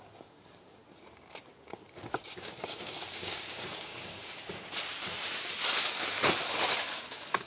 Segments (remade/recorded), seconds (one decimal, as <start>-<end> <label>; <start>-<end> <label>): 0.0-4.6 remade; 4.6-7.0 recorded; 7.0-7.5 remade

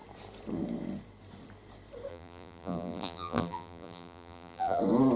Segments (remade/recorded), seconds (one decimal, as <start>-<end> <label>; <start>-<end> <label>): 0.0-2.1 recorded; 2.1-4.8 remade; 4.8-5.2 recorded

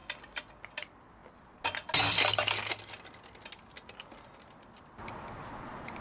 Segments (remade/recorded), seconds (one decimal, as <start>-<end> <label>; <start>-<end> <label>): 0.0-6.0 recorded

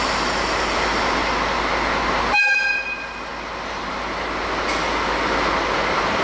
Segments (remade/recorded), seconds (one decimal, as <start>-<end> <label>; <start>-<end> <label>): 0.0-6.2 recorded

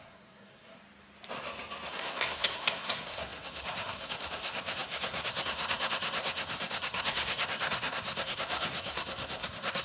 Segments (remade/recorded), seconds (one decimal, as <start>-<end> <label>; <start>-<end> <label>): 0.0-0.8 remade; 0.8-1.9 recorded; 1.9-9.8 remade

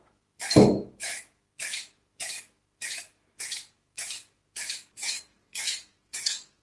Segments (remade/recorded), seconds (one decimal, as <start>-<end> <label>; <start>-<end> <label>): 0.0-6.6 remade

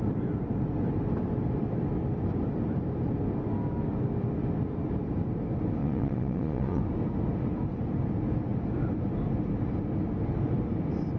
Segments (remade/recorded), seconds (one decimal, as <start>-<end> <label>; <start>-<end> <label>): 0.0-5.8 recorded; 5.8-6.8 remade; 6.8-11.2 recorded

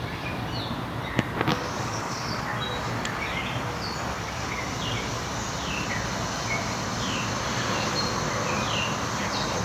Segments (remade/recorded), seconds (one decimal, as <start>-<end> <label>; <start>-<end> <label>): 0.0-1.5 recorded; 1.5-2.4 remade; 2.4-9.6 recorded